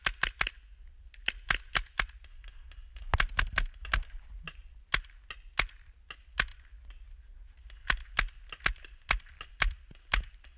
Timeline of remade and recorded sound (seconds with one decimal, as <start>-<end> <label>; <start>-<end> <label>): 0.0-10.6 recorded